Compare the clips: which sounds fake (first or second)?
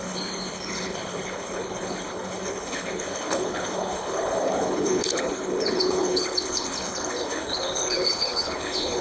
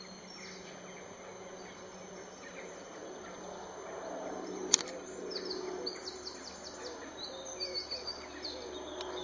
first